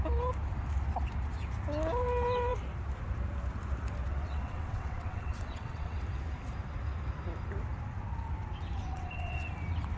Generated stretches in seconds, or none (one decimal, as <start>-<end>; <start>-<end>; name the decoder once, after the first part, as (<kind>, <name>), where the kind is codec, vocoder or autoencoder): 4.1-6.0 (vocoder, WaveNeXt); 8.8-9.5